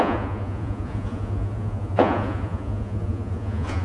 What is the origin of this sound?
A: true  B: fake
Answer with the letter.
B